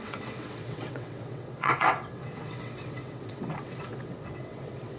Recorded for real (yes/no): no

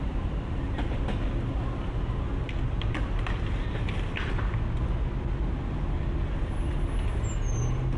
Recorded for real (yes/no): yes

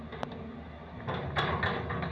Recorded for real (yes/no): yes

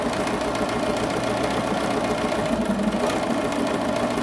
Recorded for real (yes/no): yes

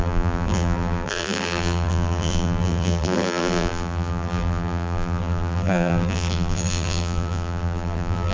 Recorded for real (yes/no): no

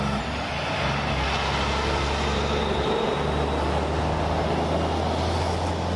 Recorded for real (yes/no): yes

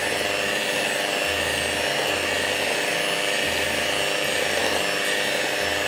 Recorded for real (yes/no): yes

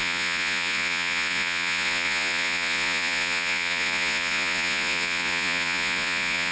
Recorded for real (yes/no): no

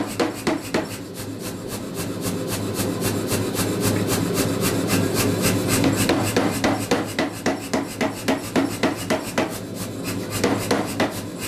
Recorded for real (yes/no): yes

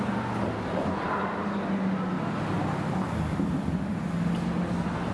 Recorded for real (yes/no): yes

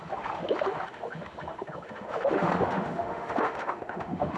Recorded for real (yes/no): no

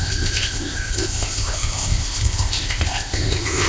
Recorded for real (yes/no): no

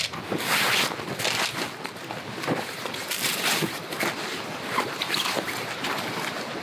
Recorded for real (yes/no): yes